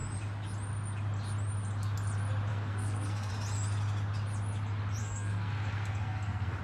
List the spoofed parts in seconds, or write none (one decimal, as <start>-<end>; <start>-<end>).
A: 2.5-3.3; 5.0-6.6